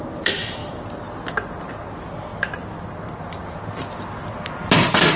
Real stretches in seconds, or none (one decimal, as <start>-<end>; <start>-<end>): 0.0-5.2